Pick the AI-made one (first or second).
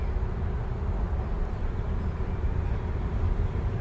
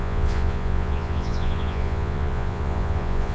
second